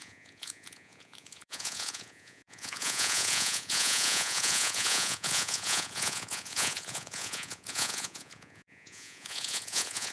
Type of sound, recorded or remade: remade